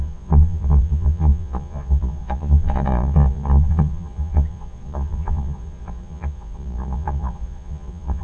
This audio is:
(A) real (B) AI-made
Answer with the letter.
B